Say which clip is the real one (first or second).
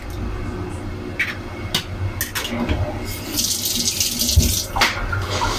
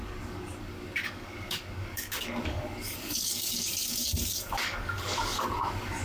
first